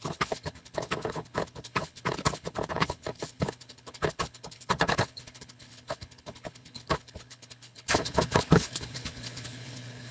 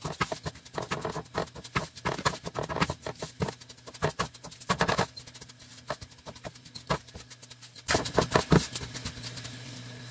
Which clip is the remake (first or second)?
first